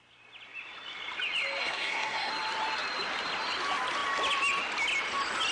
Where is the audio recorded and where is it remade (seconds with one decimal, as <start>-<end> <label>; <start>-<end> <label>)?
0.0-1.6 recorded; 1.6-2.3 remade; 2.3-5.5 recorded